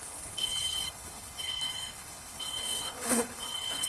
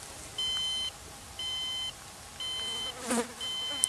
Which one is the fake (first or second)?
first